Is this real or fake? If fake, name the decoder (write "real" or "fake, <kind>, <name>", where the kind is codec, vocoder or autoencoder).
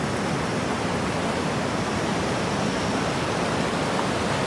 real